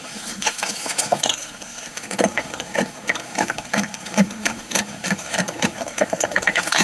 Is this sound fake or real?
fake